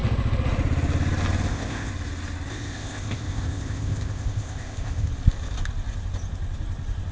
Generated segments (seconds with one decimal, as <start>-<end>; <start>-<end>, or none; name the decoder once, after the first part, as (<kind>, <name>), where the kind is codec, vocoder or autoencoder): 1.5-1.9 (codec, ZipCodec); 2.5-5.1